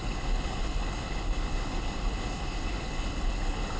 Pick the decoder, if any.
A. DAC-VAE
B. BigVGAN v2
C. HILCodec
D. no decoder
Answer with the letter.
C